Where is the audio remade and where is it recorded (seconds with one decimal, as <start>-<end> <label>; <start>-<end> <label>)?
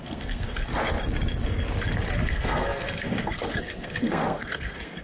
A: 0.0-0.7 remade; 0.7-2.2 recorded; 2.2-5.0 remade